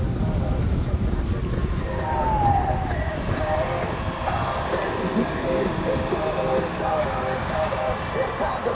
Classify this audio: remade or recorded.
recorded